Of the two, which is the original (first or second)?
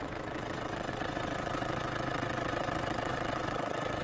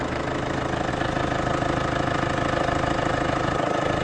second